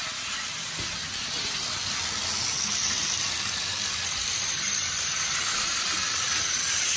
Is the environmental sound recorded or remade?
recorded